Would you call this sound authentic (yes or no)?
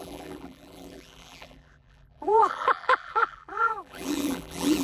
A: no